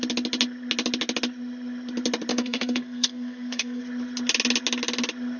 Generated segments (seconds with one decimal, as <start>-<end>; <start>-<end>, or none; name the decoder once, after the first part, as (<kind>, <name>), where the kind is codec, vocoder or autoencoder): 2.3-3.8 (codec, SNAC)